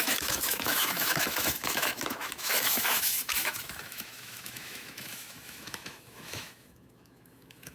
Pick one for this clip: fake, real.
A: fake